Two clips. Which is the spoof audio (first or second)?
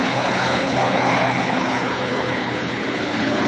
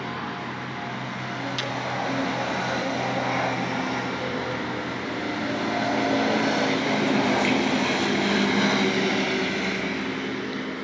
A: first